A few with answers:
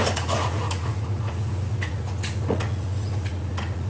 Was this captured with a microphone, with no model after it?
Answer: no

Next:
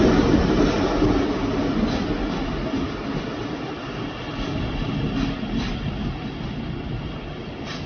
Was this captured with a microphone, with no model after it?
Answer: yes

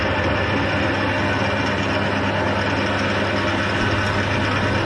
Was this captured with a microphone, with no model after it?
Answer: yes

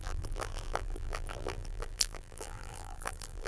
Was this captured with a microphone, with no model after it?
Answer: no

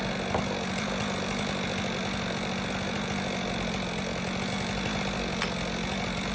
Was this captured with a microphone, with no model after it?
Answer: yes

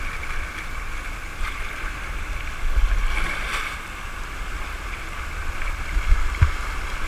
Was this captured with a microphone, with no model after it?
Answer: yes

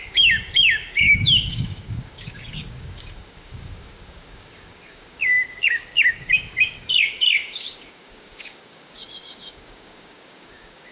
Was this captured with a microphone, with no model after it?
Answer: no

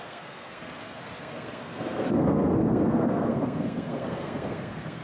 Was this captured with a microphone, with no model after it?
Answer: no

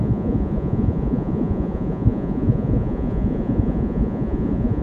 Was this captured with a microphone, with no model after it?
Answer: no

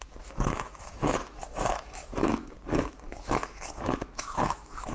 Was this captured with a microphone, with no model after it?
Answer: no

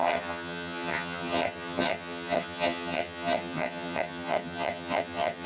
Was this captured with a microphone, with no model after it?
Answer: no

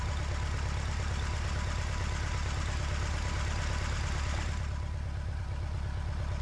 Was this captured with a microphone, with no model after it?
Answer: yes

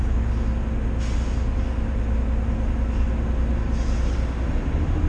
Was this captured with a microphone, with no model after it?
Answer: yes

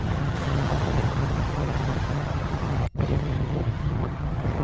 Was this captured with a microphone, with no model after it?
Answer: no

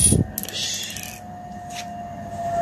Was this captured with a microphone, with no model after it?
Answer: yes